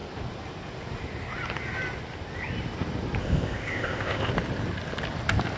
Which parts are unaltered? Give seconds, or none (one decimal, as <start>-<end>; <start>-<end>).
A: 0.0-3.2; 4.3-5.6